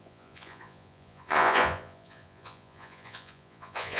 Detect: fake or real fake